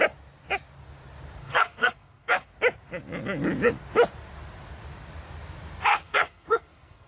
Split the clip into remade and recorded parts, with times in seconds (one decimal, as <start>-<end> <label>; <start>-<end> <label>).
0.0-1.4 recorded; 1.4-2.5 remade; 2.5-5.9 recorded; 5.9-7.1 remade